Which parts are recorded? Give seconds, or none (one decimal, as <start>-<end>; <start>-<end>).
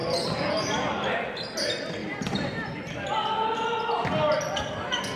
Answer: 0.0-2.0; 2.8-5.2